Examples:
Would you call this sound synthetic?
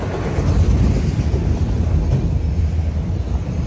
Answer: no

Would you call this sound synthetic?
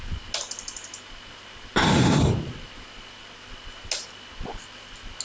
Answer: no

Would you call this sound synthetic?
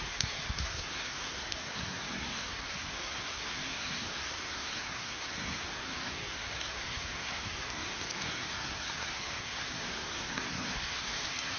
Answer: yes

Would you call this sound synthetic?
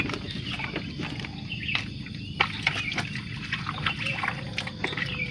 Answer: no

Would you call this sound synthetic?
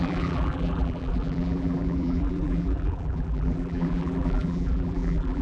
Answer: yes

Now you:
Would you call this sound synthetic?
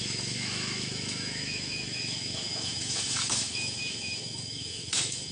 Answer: yes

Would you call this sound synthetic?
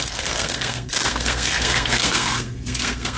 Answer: yes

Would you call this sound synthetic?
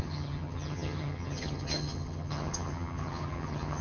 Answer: yes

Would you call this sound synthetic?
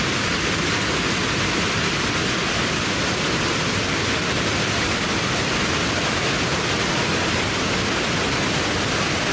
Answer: no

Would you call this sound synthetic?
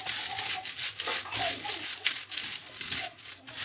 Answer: no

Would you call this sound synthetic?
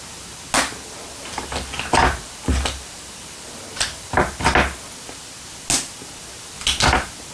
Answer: no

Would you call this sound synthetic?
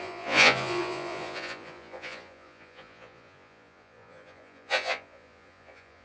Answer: yes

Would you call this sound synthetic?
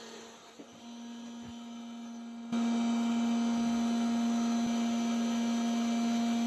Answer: no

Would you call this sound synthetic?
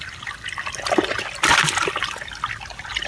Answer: no